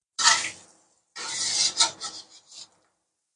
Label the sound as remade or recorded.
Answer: recorded